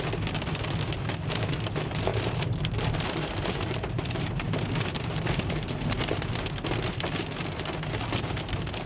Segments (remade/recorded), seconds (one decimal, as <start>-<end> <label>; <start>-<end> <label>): 0.0-2.1 recorded; 2.1-6.4 remade; 6.4-8.9 recorded